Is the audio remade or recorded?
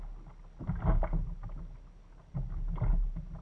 recorded